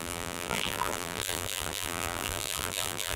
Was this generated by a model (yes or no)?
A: yes